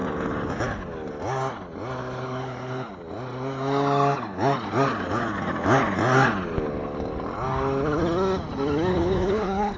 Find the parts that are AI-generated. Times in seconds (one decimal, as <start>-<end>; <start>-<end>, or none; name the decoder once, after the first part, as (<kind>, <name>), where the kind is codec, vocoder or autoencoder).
2.0-2.9 (codec, HILCodec); 8.9-9.8